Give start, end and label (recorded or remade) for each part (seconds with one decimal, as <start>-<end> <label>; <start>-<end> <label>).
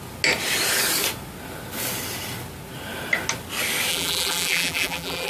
0.0-3.9 recorded; 3.9-5.3 remade